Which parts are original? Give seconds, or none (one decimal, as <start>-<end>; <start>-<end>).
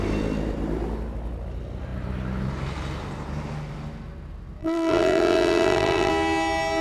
0.0-4.6; 6.1-6.8